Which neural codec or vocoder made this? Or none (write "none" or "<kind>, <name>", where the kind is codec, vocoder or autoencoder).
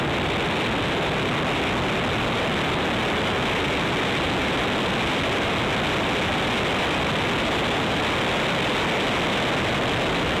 none